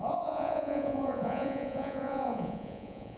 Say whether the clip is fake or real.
fake